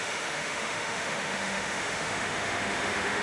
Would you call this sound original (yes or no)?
no